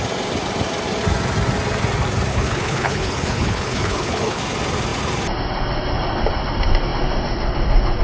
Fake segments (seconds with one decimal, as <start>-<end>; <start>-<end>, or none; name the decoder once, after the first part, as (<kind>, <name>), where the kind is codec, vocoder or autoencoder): 2.3-4.4 (codec, HILCodec)